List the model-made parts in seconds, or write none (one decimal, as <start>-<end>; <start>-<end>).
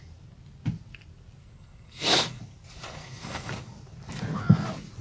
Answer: 1.4-2.4; 3.0-3.5